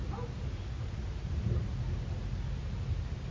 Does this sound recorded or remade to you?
recorded